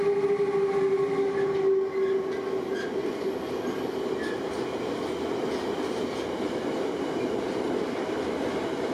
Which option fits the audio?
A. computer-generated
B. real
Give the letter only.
B